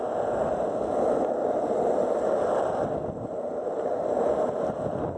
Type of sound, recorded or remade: recorded